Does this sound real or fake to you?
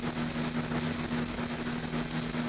real